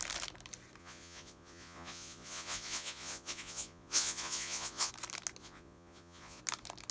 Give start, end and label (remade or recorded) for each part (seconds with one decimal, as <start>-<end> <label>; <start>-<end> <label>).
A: 0.0-0.8 recorded; 0.8-4.9 remade; 4.9-5.4 recorded; 5.4-6.4 remade; 6.4-6.9 recorded